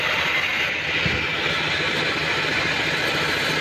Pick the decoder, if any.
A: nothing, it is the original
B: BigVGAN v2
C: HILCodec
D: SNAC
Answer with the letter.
A